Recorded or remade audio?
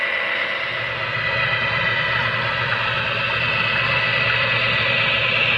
recorded